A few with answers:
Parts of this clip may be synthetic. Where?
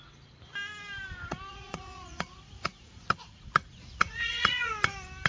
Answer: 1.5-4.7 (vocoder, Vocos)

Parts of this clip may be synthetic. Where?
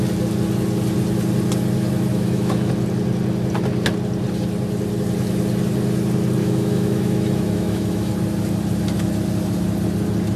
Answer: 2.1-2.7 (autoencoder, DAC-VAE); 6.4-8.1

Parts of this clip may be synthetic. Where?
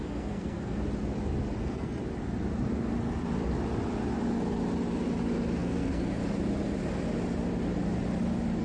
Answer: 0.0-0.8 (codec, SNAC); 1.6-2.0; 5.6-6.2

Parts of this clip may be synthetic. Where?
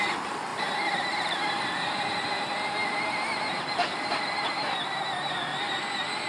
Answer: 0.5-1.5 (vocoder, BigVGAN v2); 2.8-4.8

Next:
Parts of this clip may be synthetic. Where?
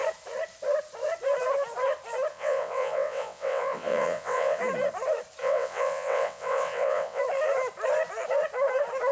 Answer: 2.3-4.6 (vocoder, WaveNeXt); 5.4-7.2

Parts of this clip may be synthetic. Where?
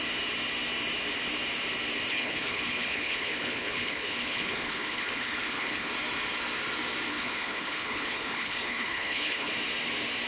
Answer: 2.1-5.9 (codec, HILCodec); 7.1-9.5